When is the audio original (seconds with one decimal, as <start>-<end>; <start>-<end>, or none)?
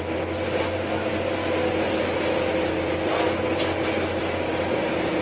0.0-5.2